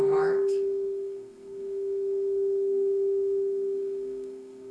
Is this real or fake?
fake